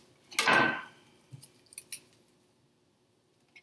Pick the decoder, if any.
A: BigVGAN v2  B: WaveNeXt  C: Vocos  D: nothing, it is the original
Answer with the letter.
D